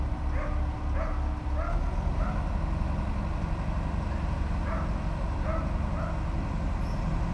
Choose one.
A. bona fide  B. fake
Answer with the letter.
A